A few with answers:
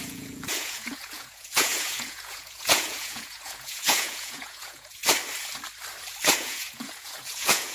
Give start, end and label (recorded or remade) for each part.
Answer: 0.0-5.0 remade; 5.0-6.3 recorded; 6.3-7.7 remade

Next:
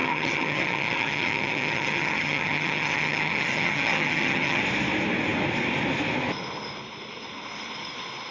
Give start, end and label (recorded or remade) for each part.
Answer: 0.0-4.6 remade; 4.6-8.3 recorded

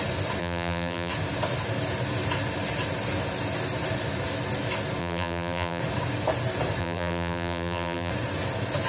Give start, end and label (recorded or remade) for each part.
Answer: 0.0-0.4 recorded; 0.4-1.1 remade; 1.1-5.0 recorded; 5.0-5.8 remade; 5.8-6.8 recorded; 6.8-8.1 remade; 8.1-8.9 recorded

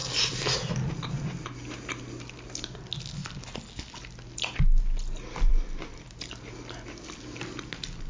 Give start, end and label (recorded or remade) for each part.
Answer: 0.0-8.1 recorded